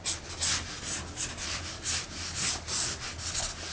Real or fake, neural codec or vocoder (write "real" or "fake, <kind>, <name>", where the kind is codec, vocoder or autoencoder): real